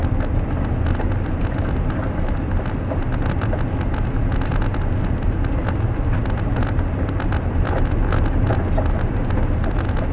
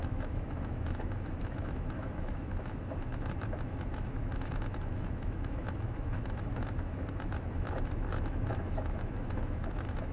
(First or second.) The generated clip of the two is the second